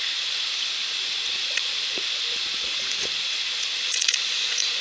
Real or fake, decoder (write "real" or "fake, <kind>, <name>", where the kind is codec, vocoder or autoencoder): fake, vocoder, Vocos